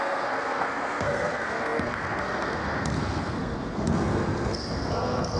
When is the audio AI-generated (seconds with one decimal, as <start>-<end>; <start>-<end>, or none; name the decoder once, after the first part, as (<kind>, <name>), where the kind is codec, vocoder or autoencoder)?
0.0-5.4 (codec, SNAC)